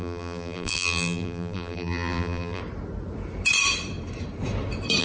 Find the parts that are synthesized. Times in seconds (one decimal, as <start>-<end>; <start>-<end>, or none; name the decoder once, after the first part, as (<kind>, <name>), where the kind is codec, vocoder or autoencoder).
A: 0.0-2.6 (vocoder, BigVGAN v2)